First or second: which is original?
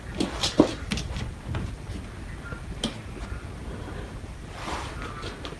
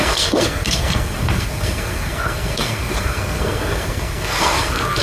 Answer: first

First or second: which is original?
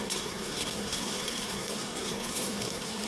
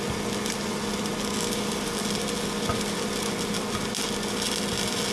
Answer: second